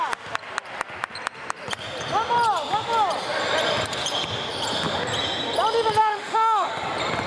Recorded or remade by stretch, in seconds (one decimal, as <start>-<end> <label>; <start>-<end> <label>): 0.0-6.0 recorded; 6.0-6.7 remade; 6.7-7.3 recorded